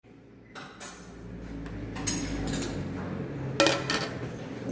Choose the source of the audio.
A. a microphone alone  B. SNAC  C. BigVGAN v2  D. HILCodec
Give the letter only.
A